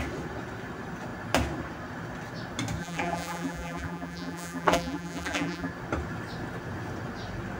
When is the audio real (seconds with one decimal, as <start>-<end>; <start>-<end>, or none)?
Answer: 0.0-2.8; 5.7-7.6